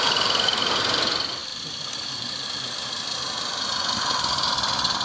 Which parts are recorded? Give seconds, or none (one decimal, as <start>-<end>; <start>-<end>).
0.0-5.0

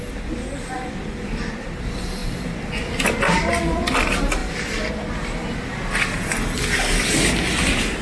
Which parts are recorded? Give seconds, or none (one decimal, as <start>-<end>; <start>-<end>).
0.0-2.2; 3.8-8.0

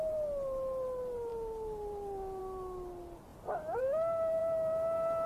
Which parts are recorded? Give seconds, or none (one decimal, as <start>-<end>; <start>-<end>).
0.0-5.3

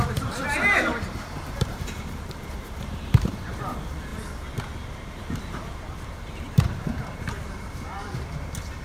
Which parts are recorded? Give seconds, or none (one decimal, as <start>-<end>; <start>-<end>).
4.1-5.4

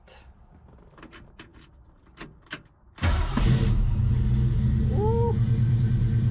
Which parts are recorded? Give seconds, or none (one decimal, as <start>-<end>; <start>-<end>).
0.0-6.3

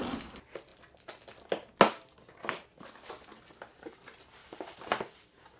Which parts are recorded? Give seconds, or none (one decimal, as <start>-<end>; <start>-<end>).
0.0-4.4